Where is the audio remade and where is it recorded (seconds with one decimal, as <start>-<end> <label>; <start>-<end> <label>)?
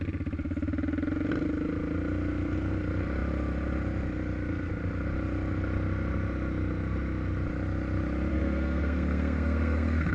0.0-8.3 recorded; 8.3-10.1 remade